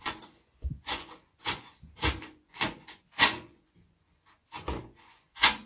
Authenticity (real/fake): fake